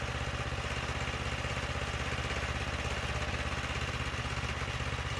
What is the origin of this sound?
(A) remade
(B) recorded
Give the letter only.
B